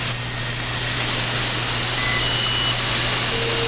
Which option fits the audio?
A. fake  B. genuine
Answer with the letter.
B